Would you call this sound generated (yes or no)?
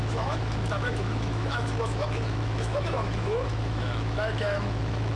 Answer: yes